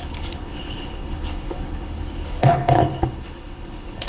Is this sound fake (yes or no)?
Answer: yes